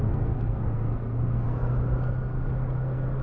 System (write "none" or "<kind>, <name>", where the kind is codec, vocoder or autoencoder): codec, SNAC